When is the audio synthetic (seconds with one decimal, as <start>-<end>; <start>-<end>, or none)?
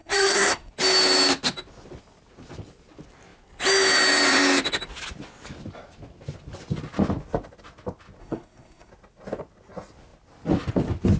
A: 0.0-0.7; 8.2-8.9